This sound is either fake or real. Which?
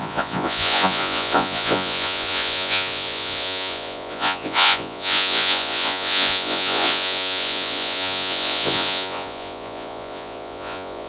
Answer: fake